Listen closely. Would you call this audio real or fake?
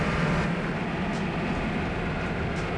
real